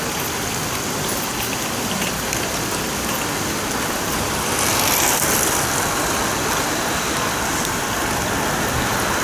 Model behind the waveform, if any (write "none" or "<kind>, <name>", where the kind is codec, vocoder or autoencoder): none